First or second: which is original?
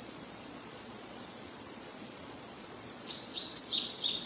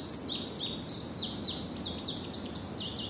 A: second